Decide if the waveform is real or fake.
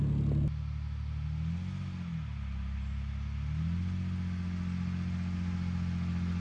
real